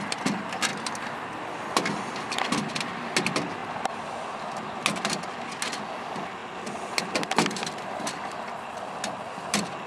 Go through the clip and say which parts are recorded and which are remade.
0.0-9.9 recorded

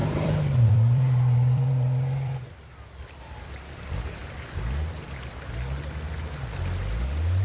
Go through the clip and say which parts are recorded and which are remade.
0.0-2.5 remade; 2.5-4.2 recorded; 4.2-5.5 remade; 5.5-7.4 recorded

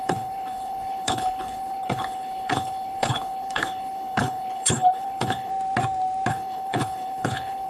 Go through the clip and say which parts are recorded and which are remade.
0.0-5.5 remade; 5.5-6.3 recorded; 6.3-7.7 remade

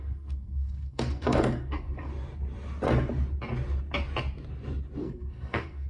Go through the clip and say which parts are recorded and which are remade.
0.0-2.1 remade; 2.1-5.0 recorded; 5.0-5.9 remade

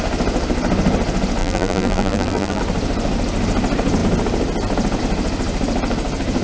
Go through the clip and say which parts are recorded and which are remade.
0.0-1.4 recorded; 1.4-2.6 remade; 2.6-6.4 recorded